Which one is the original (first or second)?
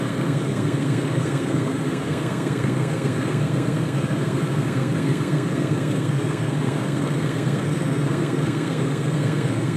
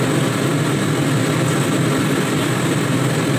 second